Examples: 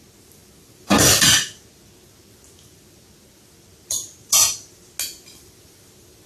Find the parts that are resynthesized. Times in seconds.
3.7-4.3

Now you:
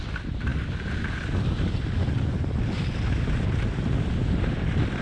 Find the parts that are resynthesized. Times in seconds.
none

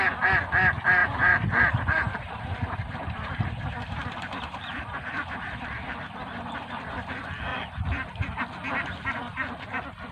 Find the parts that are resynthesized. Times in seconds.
1.0-5.6